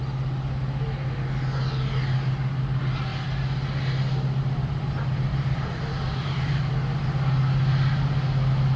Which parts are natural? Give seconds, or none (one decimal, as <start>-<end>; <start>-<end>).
0.0-5.3; 6.6-8.8